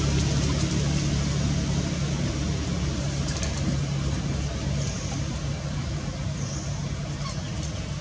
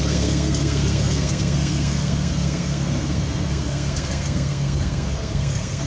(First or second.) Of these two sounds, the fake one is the second